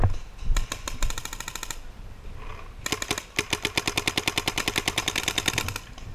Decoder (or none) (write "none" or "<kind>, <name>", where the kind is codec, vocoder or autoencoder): none